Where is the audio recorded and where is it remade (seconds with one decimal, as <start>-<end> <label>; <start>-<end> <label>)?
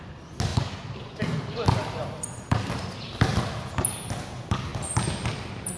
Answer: 0.0-1.8 recorded; 1.8-2.7 remade; 2.7-5.8 recorded